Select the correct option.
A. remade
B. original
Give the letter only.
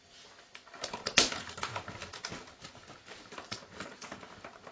B